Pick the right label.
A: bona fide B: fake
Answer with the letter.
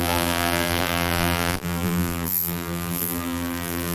B